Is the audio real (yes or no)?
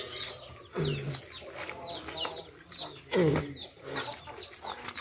yes